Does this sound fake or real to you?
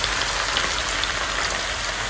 real